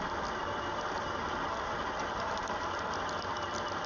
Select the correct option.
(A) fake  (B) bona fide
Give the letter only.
B